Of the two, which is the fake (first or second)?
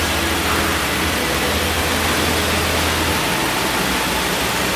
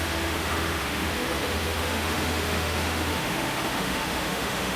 second